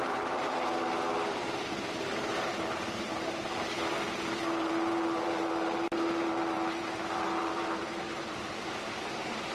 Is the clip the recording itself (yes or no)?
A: no